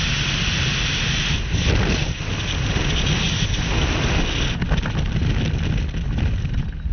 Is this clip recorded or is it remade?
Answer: recorded